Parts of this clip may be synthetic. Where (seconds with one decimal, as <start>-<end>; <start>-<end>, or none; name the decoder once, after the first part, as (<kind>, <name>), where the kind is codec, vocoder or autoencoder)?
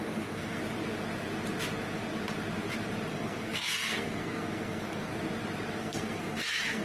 0.0-0.6 (codec, SNAC); 3.1-5.1; 5.8-6.8